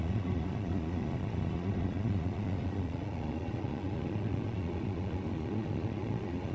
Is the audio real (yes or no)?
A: no